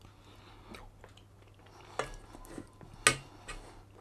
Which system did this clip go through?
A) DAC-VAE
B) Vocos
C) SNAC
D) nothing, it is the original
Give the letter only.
D